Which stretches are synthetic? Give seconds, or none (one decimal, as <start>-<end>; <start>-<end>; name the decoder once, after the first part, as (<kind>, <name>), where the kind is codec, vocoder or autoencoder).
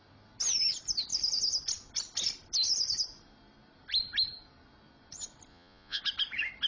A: 5.5-6.0 (vocoder, Vocos)